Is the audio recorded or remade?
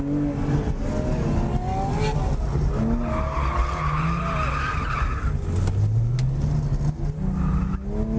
recorded